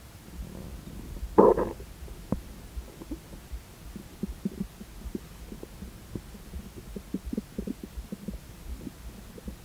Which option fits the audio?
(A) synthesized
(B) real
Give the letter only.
B